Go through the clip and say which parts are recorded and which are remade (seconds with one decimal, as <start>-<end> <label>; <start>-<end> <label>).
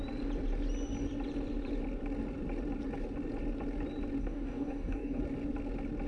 0.0-4.2 recorded; 4.2-5.2 remade; 5.2-6.1 recorded